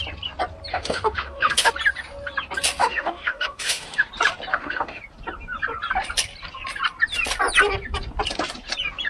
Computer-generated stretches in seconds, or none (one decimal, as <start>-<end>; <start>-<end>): 0.7-1.7; 2.8-4.1; 4.5-5.0